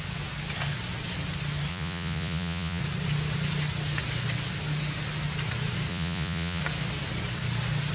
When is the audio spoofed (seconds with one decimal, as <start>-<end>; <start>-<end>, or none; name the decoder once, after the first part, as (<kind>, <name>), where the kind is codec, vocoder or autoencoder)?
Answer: 1.7-2.8 (vocoder, Vocos); 5.9-6.6